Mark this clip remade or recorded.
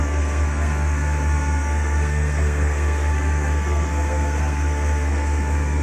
remade